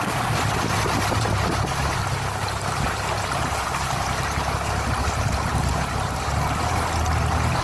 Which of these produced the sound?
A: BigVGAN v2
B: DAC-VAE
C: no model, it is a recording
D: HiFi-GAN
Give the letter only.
C